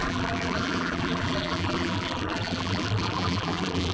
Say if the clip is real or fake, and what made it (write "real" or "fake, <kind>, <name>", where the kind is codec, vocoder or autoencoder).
fake, vocoder, BigVGAN v2